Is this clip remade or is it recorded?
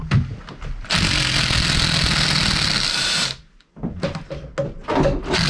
recorded